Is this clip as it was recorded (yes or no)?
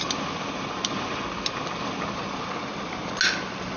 yes